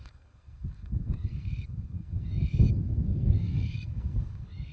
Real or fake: fake